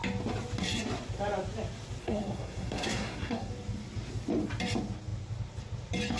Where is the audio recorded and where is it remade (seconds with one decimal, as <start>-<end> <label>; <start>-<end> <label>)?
0.0-2.0 recorded; 2.0-3.5 remade; 3.5-6.2 recorded